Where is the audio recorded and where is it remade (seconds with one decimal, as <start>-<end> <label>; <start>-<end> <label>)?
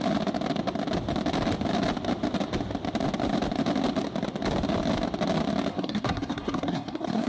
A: 0.0-5.7 recorded; 5.7-7.3 remade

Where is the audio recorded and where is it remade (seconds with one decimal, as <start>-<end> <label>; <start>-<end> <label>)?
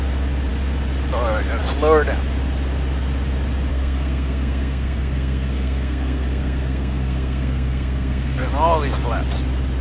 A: 0.0-3.7 recorded; 3.7-8.4 remade; 8.4-9.8 recorded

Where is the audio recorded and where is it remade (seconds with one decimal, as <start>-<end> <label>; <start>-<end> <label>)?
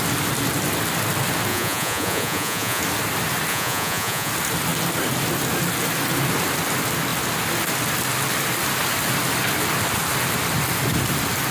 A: 0.0-1.5 recorded; 1.5-2.8 remade; 2.8-3.5 recorded; 3.5-4.3 remade; 4.3-11.5 recorded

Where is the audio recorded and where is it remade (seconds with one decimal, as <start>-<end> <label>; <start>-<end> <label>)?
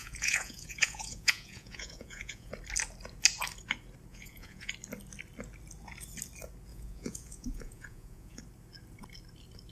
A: 0.0-2.5 remade; 2.5-4.1 recorded; 4.1-4.7 remade; 4.7-6.7 recorded; 6.7-8.4 remade; 8.4-9.7 recorded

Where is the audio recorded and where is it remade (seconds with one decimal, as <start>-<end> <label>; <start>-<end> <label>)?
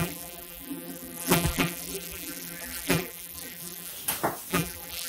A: 0.0-3.9 remade; 3.9-4.5 recorded; 4.5-5.1 remade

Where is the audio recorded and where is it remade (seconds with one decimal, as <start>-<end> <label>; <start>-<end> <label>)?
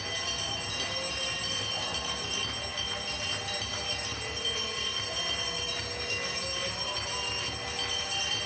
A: 0.0-8.5 recorded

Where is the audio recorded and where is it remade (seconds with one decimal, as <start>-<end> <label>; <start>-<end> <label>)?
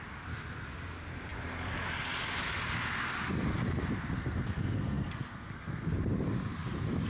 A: 0.0-4.2 recorded; 4.2-5.9 remade; 5.9-7.1 recorded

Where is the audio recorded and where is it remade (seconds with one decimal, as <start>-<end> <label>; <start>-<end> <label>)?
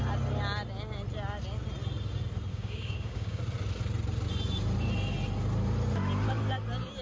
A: 0.0-2.5 recorded; 2.5-3.4 remade; 3.4-7.0 recorded